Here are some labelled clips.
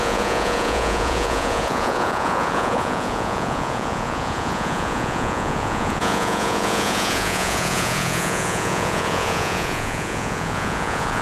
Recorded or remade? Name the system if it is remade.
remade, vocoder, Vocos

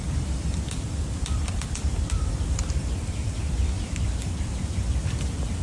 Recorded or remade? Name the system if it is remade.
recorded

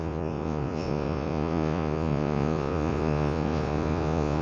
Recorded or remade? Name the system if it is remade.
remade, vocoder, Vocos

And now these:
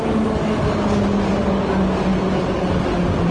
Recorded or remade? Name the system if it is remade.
recorded